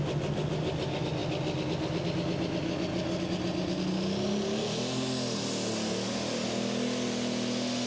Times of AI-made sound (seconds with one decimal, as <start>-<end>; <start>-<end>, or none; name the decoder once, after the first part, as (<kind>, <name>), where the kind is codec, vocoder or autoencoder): none